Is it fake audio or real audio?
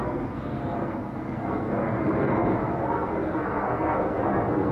fake